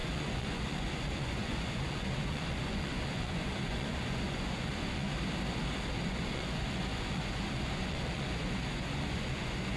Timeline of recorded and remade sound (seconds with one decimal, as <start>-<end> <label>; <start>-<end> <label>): 0.0-5.1 remade; 5.1-5.9 recorded; 5.9-9.8 remade